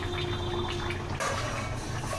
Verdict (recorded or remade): recorded